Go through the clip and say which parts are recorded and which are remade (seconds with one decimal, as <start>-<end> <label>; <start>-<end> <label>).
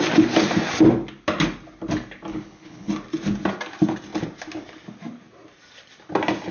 0.0-2.3 recorded; 2.3-2.9 remade; 2.9-6.5 recorded